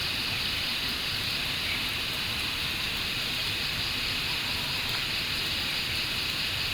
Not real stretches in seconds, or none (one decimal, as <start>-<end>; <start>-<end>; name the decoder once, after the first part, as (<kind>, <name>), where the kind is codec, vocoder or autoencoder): none